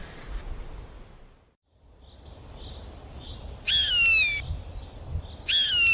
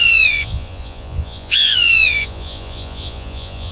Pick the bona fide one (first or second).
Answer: first